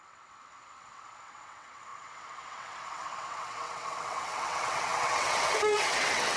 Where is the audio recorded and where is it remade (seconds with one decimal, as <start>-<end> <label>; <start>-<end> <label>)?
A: 0.0-6.4 remade